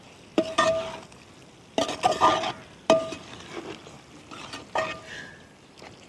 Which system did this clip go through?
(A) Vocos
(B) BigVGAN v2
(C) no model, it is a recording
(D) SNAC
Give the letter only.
C